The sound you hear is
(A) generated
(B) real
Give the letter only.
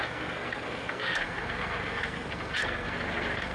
A